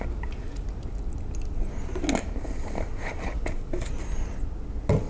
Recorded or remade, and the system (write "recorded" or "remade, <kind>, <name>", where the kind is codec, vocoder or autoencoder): recorded